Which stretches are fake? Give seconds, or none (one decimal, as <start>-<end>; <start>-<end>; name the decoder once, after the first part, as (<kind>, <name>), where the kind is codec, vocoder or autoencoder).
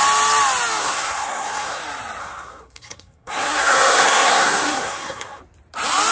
0.8-1.8 (codec, SNAC); 2.2-5.4